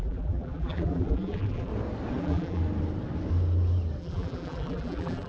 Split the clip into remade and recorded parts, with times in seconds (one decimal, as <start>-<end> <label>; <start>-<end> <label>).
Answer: 0.0-1.7 remade; 1.7-2.2 recorded; 2.2-2.6 remade; 2.6-4.0 recorded; 4.0-5.3 remade